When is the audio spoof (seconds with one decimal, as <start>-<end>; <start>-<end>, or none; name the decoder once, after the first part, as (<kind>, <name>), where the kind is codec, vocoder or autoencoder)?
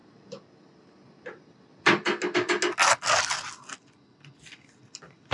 none